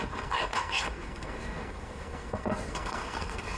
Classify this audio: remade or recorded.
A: remade